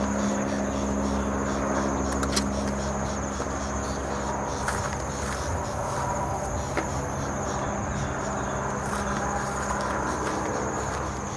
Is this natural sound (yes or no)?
yes